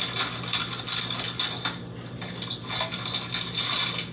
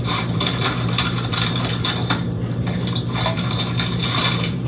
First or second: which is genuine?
first